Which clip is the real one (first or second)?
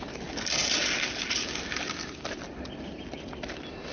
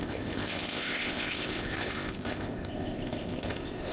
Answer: first